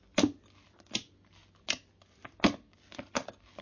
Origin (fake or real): real